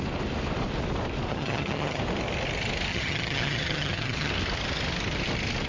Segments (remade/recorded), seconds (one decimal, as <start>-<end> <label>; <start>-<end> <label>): 0.0-1.3 recorded; 1.3-2.0 remade; 2.0-2.9 recorded; 2.9-4.3 remade; 4.3-5.7 recorded